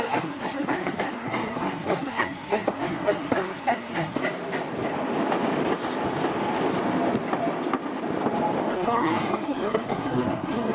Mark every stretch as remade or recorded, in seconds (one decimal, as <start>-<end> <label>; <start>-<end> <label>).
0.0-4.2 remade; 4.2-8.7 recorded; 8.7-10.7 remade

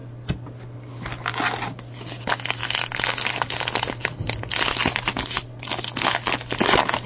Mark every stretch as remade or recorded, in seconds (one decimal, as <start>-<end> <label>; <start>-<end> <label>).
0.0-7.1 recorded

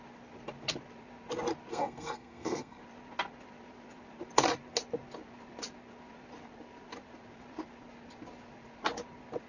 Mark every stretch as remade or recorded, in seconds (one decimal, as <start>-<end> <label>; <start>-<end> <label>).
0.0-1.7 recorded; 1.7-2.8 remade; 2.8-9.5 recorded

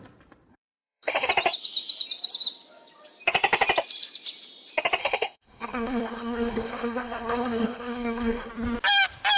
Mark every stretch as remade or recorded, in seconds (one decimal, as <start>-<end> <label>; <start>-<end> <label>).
0.0-0.5 recorded; 0.5-1.3 remade; 1.3-5.0 recorded; 5.0-8.5 remade; 8.5-9.4 recorded

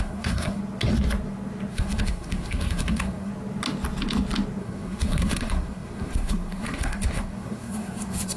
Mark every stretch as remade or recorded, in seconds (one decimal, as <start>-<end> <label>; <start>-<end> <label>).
0.0-0.6 remade; 0.6-1.7 recorded; 1.7-3.3 remade; 3.3-4.6 recorded; 4.6-8.4 remade